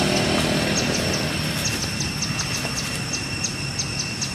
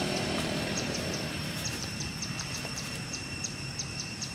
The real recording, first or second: first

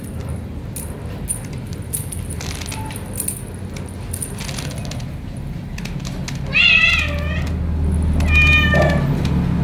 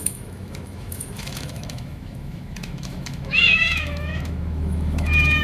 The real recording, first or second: first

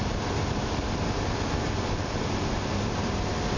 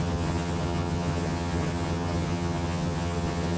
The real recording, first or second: first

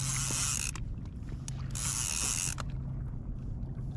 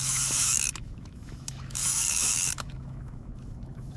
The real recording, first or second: first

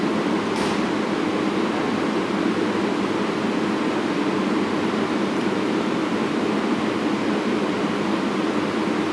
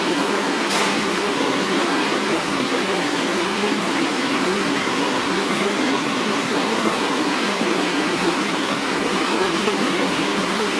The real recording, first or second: first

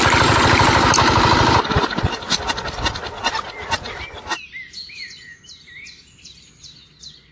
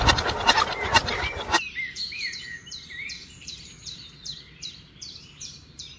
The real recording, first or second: first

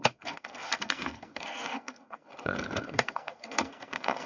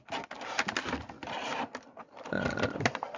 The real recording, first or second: second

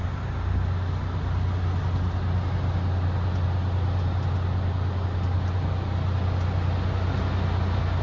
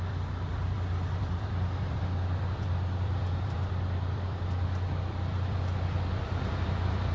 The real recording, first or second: first